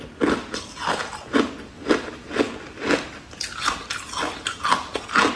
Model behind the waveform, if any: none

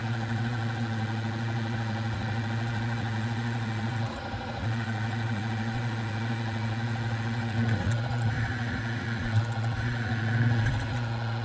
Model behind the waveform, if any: vocoder, Vocos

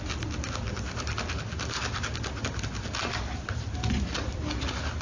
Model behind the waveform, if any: none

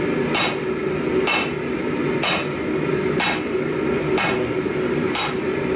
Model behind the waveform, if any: none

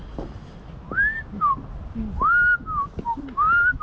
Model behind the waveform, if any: none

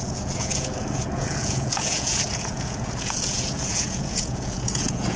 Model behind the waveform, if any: vocoder, Vocos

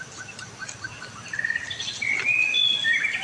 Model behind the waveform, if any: none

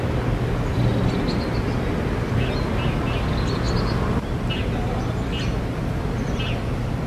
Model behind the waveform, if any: none